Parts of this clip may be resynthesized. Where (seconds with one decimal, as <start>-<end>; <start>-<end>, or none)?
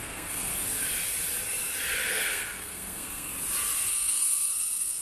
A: 0.0-0.5; 2.1-3.3; 3.9-5.0